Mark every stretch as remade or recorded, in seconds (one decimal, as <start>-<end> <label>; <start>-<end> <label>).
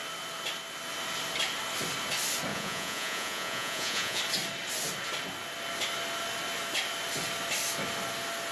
0.0-2.5 recorded; 2.5-4.2 remade; 4.2-8.5 recorded